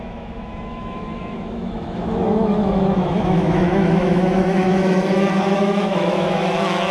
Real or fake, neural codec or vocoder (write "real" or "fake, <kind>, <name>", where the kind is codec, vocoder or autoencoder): fake, autoencoder, DAC-VAE